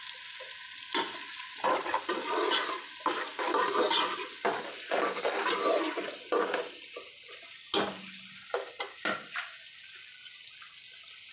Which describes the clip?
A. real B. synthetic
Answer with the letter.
A